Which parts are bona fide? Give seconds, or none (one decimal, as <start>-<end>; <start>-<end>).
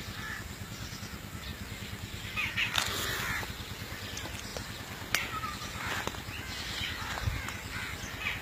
0.0-8.4